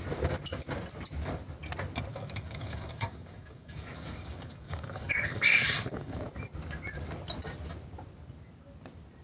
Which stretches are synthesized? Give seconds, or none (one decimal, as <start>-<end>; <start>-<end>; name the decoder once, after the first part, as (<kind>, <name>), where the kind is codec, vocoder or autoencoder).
2.1-6.2 (codec, DAC)